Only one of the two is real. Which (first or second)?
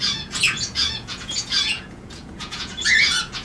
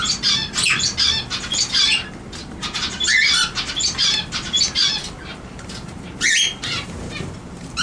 second